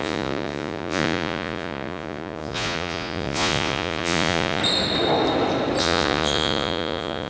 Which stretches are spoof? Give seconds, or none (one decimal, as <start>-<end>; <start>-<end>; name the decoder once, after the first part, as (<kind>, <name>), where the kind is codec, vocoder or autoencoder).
0.0-4.6 (vocoder, Vocos); 5.8-7.3